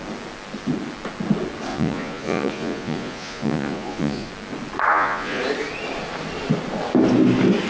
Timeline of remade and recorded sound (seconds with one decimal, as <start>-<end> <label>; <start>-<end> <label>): 0.0-1.7 recorded; 1.7-4.3 remade; 4.3-4.9 recorded; 4.9-5.4 remade; 5.4-7.7 recorded